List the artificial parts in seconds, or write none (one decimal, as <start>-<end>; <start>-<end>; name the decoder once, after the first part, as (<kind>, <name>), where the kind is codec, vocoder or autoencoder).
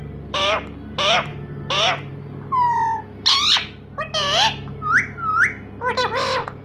0.0-1.3 (vocoder, BigVGAN v2); 2.1-3.3; 6.0-6.6